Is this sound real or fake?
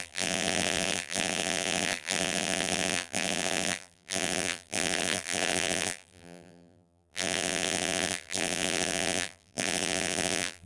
fake